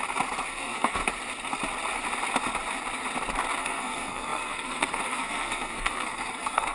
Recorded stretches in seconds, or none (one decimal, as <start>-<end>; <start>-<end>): 0.0-0.5; 1.0-3.6